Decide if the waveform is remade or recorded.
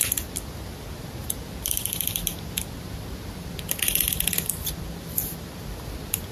remade